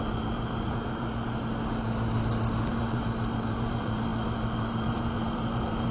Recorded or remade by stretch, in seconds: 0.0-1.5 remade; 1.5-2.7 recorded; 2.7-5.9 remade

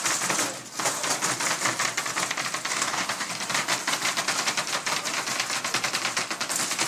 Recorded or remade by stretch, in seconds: 0.0-2.7 recorded; 2.7-3.3 remade; 3.3-6.9 recorded

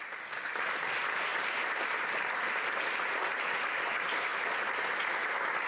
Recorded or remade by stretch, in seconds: 0.0-5.7 recorded

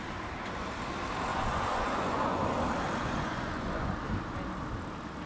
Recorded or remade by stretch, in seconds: 0.0-1.3 recorded; 1.3-2.4 remade; 2.4-3.0 recorded; 3.0-3.9 remade; 3.9-5.3 recorded

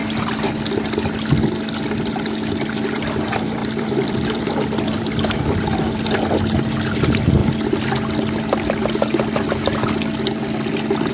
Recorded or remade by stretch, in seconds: 0.0-3.6 recorded; 3.6-5.9 remade; 5.9-11.1 recorded